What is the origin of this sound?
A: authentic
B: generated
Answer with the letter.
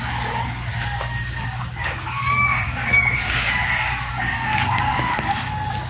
B